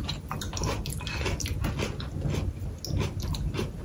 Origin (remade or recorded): recorded